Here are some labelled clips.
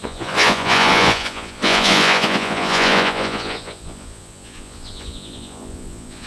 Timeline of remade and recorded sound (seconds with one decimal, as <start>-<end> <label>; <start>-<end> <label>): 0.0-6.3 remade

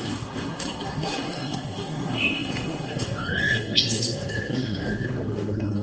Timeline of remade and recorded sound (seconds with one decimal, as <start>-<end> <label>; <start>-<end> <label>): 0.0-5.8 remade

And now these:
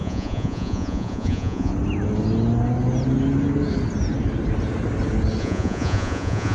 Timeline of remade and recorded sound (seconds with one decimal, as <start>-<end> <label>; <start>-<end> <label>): 0.0-1.7 remade; 1.7-5.4 recorded; 5.4-6.5 remade

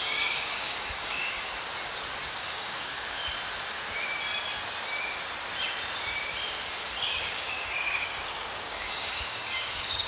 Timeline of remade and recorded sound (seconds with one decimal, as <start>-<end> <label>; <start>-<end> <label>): 0.0-1.5 remade; 1.5-2.3 recorded; 2.3-3.2 remade; 3.2-7.0 recorded; 7.0-10.1 remade